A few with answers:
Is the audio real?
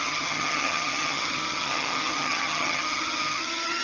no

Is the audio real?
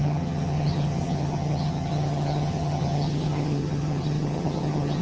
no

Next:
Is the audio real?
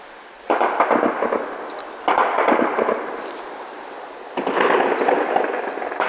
yes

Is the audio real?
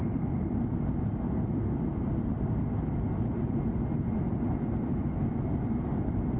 yes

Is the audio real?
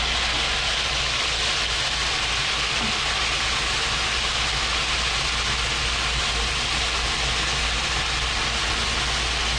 yes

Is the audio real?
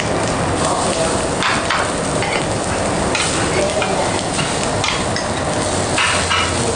yes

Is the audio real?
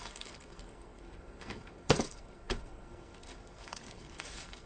no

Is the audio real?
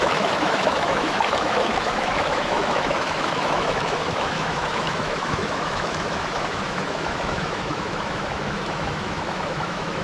no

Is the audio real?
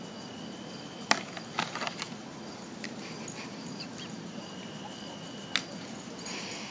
yes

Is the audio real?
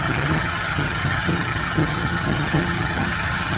no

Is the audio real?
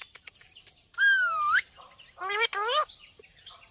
yes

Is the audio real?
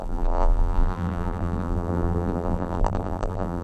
no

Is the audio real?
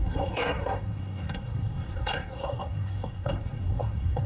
no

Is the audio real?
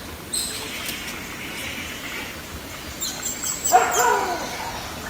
yes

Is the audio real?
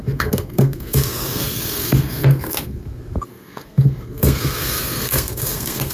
no